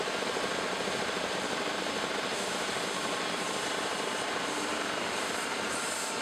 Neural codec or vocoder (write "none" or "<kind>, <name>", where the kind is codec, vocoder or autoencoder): vocoder, BigVGAN v2